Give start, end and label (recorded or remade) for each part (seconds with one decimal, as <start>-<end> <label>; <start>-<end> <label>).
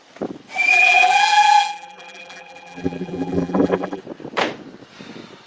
0.0-0.7 recorded; 0.7-4.0 remade; 4.0-5.5 recorded